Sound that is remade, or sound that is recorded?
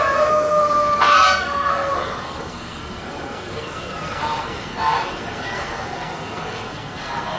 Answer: remade